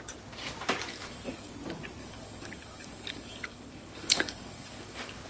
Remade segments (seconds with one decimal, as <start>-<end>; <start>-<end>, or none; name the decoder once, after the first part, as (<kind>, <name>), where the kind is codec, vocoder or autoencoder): 0.9-1.5 (codec, DAC); 2.0-5.3